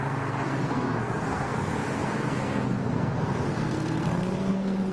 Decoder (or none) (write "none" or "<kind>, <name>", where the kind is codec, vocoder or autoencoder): codec, SNAC